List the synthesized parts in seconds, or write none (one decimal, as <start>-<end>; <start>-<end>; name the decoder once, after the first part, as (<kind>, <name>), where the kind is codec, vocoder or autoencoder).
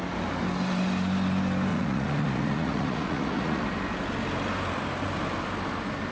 1.7-3.6 (vocoder, Vocos)